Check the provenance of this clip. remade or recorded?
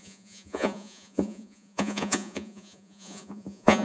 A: remade